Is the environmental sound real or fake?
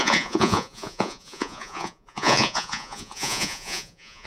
fake